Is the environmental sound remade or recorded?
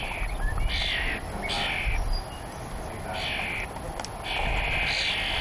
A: recorded